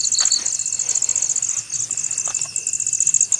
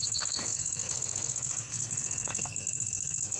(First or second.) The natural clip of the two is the first